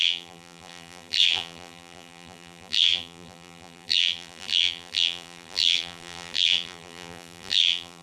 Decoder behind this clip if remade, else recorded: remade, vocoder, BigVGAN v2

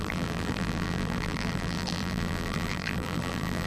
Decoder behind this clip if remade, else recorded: remade, vocoder, BigVGAN v2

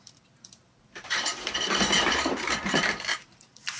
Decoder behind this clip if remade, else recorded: remade, vocoder, BigVGAN v2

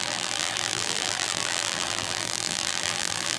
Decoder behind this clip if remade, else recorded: remade, vocoder, BigVGAN v2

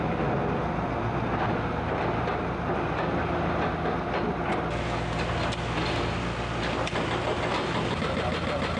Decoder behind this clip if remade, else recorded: recorded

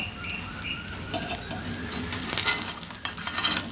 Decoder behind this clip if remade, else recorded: recorded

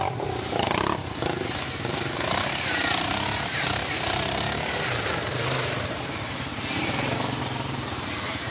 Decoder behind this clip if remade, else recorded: remade, vocoder, BigVGAN v2